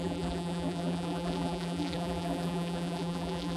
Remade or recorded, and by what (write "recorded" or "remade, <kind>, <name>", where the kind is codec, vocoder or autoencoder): remade, vocoder, BigVGAN v2